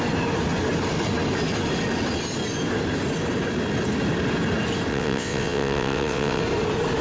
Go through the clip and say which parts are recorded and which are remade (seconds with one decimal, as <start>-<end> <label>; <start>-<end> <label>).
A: 0.0-4.9 recorded; 4.9-6.4 remade; 6.4-7.0 recorded